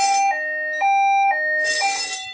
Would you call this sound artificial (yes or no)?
no